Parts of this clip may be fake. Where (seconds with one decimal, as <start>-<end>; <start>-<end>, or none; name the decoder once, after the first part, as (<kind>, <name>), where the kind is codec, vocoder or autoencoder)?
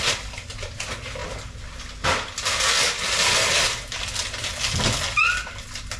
none